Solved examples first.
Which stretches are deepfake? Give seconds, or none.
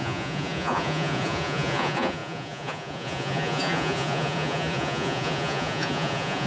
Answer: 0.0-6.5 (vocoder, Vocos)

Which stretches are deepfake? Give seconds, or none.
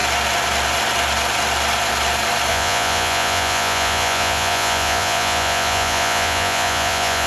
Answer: 2.5-7.3 (vocoder, Vocos)